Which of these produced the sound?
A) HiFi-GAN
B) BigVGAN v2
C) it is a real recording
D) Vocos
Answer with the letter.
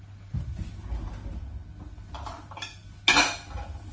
C